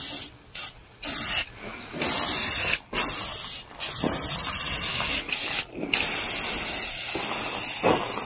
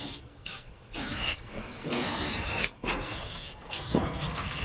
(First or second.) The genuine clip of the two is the first